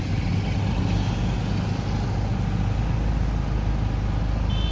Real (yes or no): yes